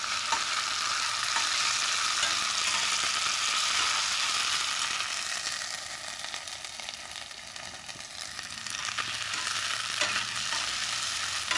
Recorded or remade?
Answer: recorded